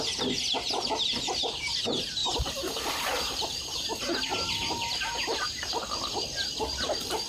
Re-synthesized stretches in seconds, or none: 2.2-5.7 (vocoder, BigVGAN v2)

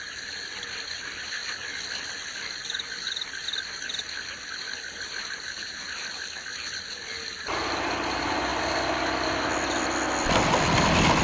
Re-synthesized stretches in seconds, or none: none